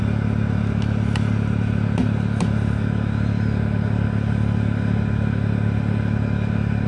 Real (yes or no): yes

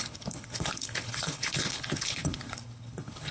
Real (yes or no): no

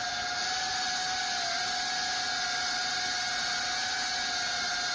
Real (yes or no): yes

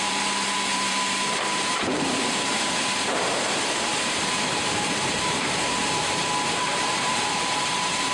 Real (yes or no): no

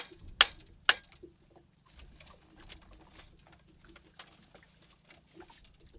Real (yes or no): yes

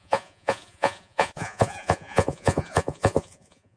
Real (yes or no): no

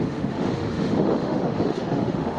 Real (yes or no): no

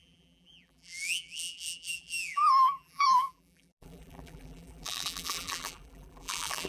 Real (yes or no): no